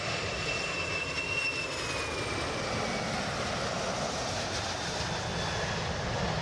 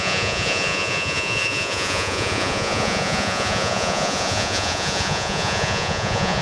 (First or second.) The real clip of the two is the first